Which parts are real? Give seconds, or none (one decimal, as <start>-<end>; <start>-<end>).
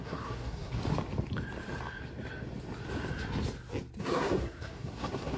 0.8-4.0